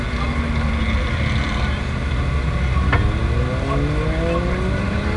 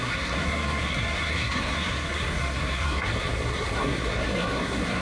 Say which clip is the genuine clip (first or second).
first